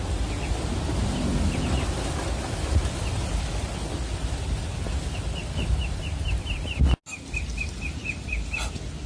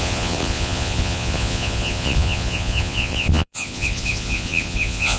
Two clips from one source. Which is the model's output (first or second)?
second